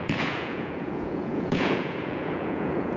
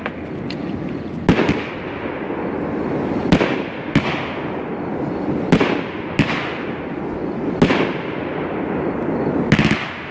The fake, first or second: first